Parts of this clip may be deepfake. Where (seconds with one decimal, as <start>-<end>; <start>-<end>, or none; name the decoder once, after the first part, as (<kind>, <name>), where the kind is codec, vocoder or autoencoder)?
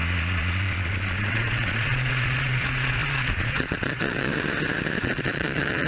0.0-4.3 (vocoder, Vocos); 5.0-5.9